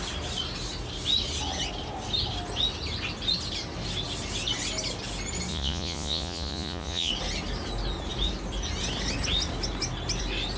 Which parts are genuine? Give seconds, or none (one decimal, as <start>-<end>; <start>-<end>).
0.0-5.5; 7.1-10.6